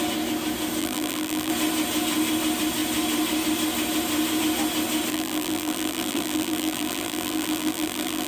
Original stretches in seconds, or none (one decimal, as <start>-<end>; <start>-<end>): 0.0-0.8; 1.5-5.1